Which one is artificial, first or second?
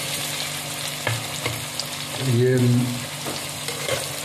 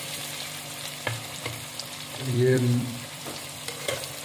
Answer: second